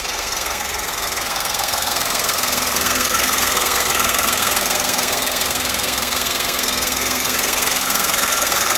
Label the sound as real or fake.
fake